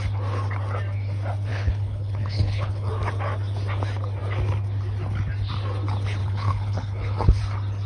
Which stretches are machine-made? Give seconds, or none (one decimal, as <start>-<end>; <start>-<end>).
1.5-2.9; 6.2-7.4